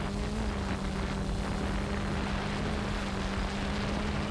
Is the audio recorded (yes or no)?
yes